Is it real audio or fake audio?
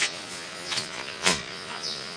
fake